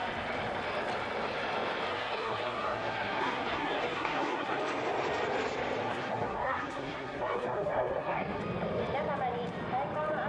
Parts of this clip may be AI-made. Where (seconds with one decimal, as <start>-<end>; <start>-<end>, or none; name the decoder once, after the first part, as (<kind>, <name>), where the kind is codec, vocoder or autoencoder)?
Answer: 1.9-4.6 (codec, SNAC); 5.8-8.4